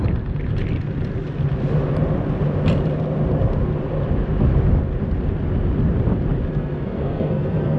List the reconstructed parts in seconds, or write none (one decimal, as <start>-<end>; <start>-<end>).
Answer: 6.5-7.8